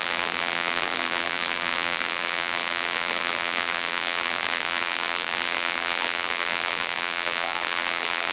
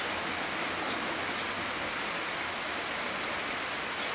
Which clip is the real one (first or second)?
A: second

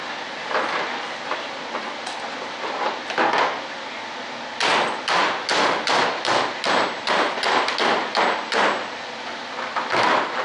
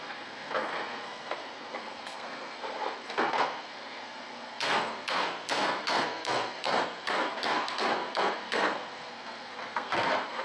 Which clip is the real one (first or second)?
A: first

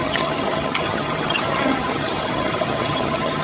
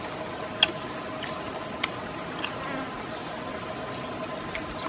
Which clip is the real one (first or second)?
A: second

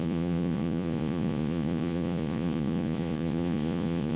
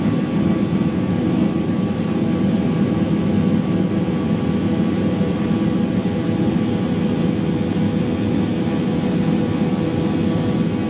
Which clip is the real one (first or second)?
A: second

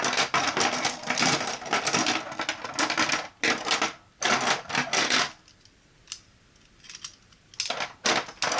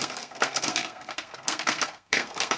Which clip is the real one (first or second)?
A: first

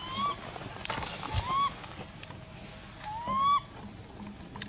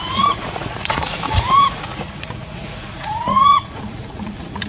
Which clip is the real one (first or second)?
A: first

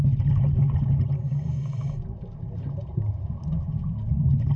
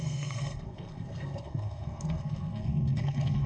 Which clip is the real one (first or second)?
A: first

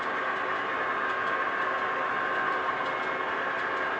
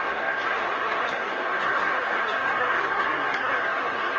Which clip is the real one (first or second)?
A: first